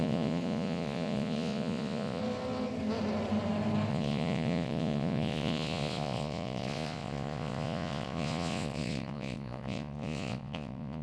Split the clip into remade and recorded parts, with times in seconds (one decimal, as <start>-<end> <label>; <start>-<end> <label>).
0.0-2.2 remade; 2.2-3.9 recorded; 3.9-11.0 remade